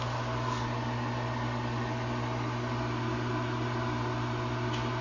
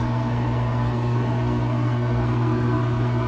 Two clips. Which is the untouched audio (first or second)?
first